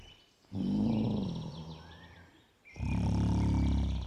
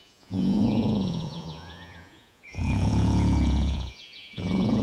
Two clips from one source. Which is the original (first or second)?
first